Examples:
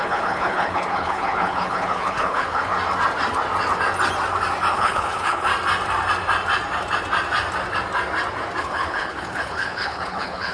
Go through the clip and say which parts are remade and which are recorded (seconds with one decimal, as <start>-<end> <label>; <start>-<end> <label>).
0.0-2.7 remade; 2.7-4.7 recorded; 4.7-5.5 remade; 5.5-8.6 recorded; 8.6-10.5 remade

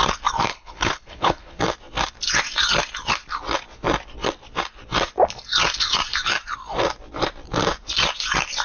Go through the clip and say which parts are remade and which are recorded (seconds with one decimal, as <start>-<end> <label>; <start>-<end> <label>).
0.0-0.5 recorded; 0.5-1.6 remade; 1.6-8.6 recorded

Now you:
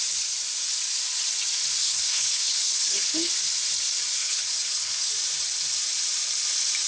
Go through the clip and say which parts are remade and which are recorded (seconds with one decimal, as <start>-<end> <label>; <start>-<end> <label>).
0.0-1.8 recorded; 1.8-3.3 remade; 3.3-4.2 recorded; 4.2-5.1 remade; 5.1-6.9 recorded

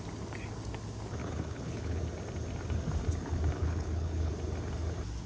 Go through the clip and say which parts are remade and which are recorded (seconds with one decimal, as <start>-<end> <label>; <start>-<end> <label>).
0.0-1.2 recorded; 1.2-2.0 remade; 2.0-3.6 recorded; 3.6-4.3 remade; 4.3-5.3 recorded